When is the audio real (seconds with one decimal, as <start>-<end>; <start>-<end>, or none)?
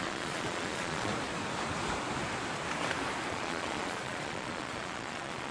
1.1-3.3